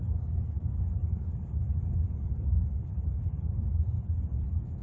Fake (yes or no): yes